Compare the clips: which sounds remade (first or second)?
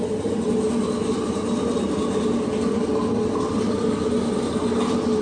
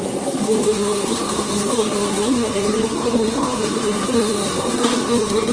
second